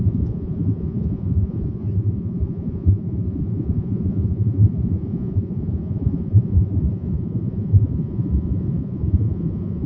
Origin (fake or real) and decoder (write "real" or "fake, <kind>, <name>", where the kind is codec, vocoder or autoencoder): fake, vocoder, Vocos